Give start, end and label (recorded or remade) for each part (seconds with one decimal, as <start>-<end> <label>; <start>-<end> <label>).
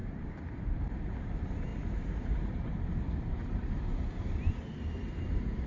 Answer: 0.0-1.2 remade; 1.2-1.7 recorded; 1.7-3.8 remade; 3.8-5.7 recorded